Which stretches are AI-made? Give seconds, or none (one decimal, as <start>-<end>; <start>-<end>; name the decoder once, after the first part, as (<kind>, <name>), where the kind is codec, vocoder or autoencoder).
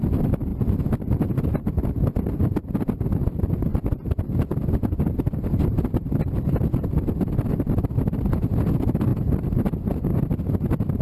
0.0-3.7 (vocoder, BigVGAN v2); 4.9-10.1